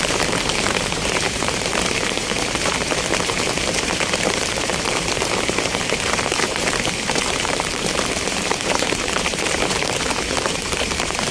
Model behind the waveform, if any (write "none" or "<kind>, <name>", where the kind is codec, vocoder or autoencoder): vocoder, BigVGAN v2